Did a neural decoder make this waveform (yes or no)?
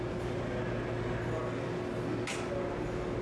no